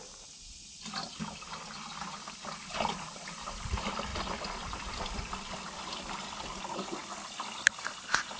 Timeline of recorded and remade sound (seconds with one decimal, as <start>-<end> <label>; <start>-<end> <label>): 0.0-4.1 recorded; 4.1-6.6 remade; 6.6-8.4 recorded